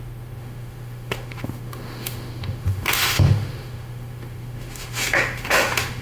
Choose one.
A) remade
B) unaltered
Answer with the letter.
A